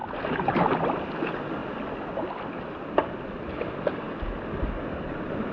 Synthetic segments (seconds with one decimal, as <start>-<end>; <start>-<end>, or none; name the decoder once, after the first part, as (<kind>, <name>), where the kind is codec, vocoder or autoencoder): none